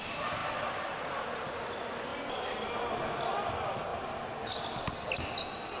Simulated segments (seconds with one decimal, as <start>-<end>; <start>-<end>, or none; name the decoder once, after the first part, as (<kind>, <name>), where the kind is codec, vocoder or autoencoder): none